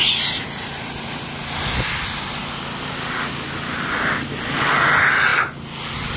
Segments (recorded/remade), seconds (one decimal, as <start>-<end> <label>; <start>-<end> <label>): 0.0-6.2 recorded